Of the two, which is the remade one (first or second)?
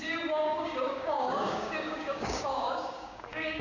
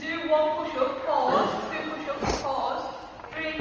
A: first